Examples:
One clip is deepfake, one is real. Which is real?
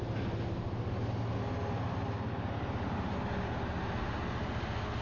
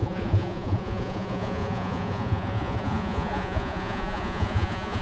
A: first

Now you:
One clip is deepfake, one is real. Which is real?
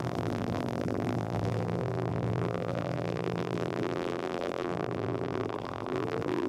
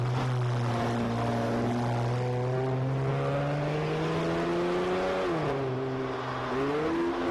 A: second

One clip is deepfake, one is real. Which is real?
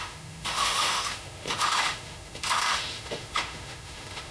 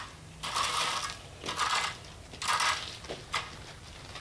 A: second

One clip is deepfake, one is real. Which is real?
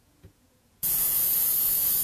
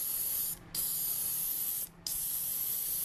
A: second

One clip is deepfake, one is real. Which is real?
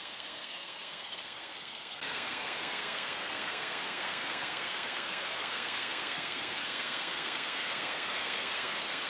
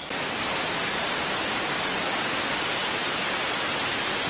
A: second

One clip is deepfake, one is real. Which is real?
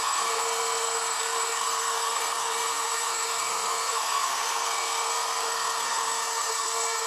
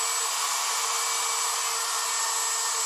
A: second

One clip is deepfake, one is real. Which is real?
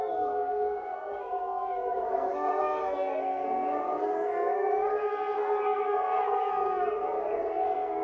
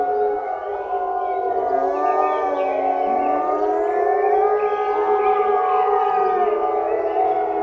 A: second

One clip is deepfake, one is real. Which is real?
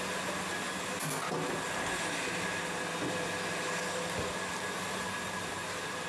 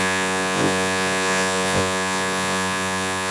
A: first